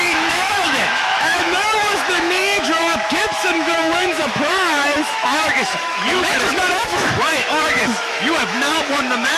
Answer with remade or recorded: remade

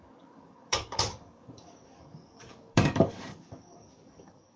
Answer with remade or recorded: remade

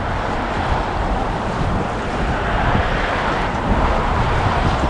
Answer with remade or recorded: recorded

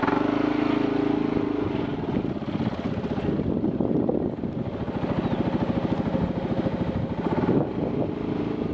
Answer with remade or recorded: recorded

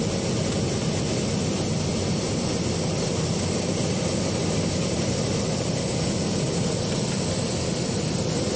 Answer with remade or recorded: recorded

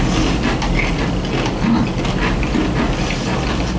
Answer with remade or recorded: recorded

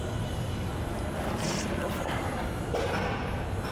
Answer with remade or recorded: recorded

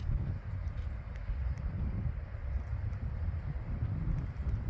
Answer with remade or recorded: recorded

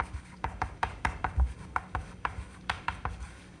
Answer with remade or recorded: remade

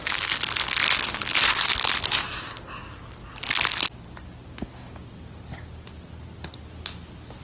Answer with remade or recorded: recorded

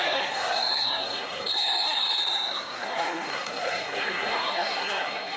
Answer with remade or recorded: remade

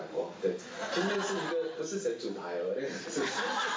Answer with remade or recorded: recorded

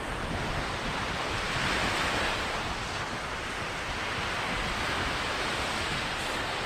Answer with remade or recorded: recorded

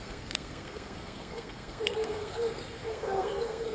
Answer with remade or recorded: remade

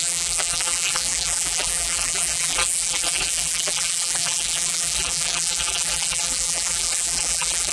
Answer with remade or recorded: remade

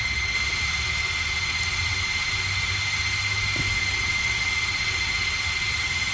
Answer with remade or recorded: recorded